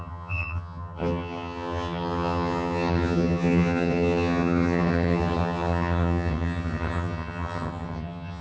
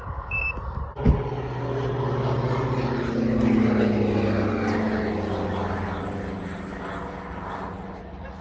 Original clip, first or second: second